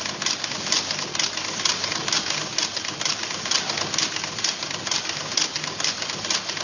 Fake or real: real